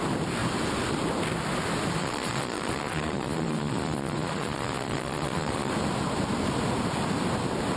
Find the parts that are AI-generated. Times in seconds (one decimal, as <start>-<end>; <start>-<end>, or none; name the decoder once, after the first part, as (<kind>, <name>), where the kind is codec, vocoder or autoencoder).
2.0-5.7 (vocoder, Vocos)